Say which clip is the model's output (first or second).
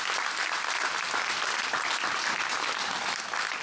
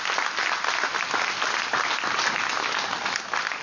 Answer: first